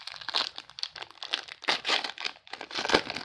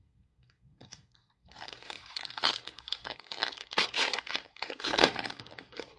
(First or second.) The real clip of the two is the first